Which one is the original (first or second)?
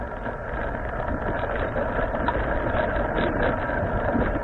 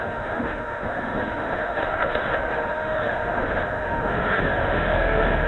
first